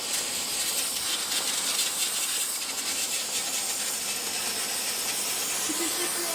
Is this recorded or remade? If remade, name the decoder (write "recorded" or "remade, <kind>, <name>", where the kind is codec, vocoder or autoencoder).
recorded